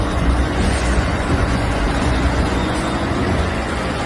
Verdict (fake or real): fake